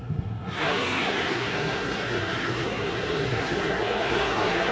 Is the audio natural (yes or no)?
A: no